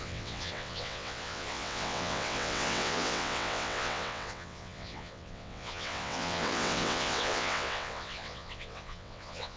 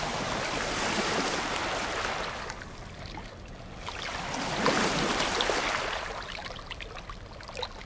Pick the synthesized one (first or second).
first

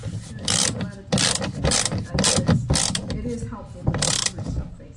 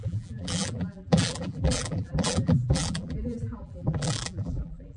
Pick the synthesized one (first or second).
second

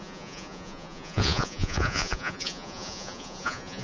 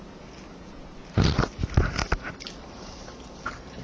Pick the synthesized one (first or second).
first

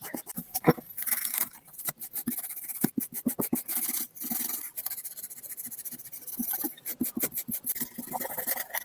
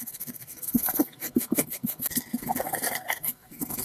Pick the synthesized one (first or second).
second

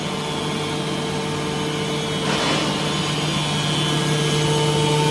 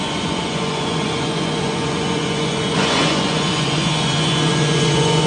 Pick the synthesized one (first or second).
second